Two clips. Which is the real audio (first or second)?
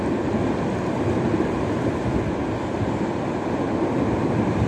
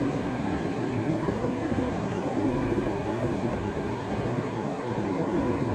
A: first